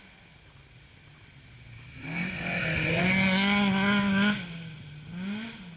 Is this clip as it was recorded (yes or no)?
yes